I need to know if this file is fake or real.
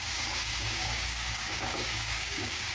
fake